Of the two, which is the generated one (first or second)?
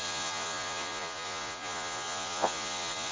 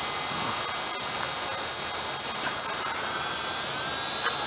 first